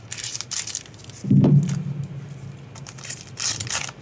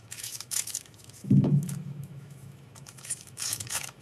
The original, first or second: first